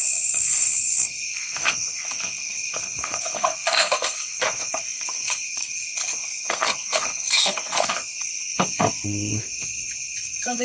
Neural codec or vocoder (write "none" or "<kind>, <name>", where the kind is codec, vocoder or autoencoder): codec, SNAC